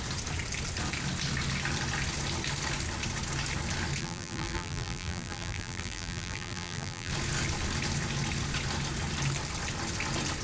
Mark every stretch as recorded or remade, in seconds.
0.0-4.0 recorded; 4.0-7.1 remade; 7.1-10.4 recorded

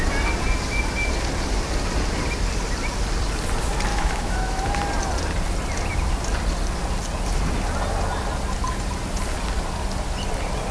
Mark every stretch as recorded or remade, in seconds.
0.0-3.9 recorded; 3.9-4.7 remade; 4.7-10.7 recorded

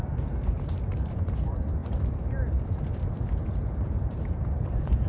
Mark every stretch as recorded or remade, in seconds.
0.0-5.1 remade

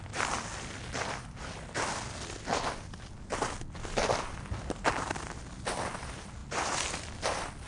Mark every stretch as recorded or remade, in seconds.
0.0-7.7 recorded

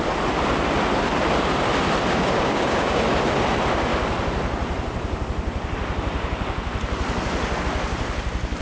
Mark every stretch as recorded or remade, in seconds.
0.0-2.1 recorded; 2.1-3.0 remade; 3.0-8.6 recorded